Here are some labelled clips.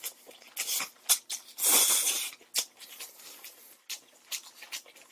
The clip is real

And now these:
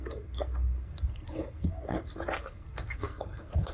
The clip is fake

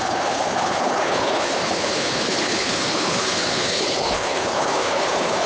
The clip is fake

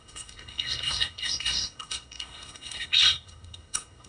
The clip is fake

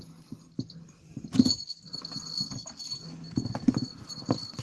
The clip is real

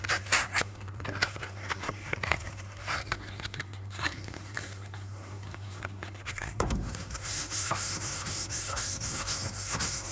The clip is fake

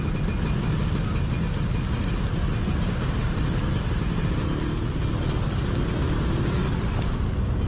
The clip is real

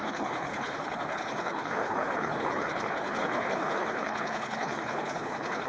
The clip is fake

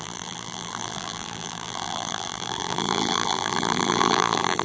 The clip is fake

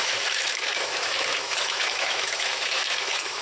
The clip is fake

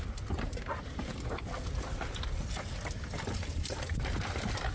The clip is real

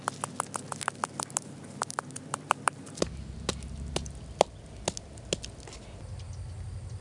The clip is real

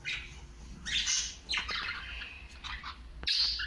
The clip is real